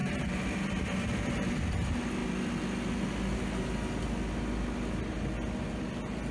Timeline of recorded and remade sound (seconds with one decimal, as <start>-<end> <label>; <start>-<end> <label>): 0.0-1.6 remade; 1.6-6.3 recorded